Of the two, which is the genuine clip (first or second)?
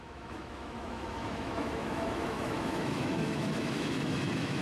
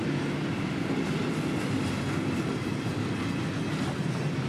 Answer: second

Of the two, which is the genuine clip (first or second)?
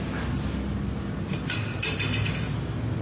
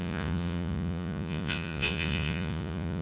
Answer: first